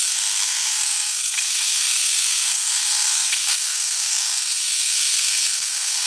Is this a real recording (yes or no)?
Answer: no